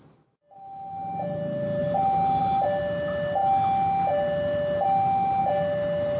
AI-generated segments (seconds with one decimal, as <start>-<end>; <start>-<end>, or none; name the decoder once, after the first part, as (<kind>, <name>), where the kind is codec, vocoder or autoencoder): none